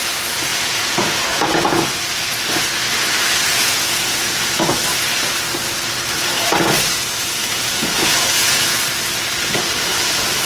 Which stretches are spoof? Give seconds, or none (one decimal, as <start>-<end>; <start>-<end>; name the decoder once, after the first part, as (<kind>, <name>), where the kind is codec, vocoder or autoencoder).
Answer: 0.5-1.8 (vocoder, Vocos); 3.5-4.7; 7.4-8.8